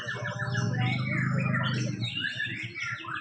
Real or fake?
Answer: real